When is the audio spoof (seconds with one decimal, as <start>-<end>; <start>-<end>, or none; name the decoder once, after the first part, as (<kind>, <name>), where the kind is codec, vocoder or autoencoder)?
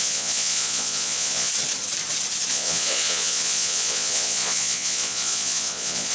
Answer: 0.0-1.5 (vocoder, Vocos); 2.5-6.1